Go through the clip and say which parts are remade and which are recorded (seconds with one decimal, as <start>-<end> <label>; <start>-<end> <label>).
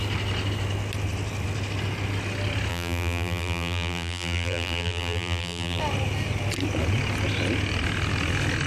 0.0-2.7 recorded; 2.7-5.8 remade; 5.8-8.7 recorded